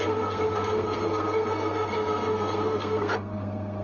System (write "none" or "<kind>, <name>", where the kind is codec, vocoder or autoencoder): codec, SNAC